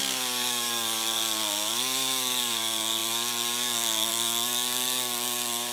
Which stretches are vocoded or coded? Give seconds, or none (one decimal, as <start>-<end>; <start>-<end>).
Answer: 0.0-5.7